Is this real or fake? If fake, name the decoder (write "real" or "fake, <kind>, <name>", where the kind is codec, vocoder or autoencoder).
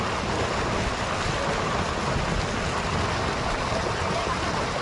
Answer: real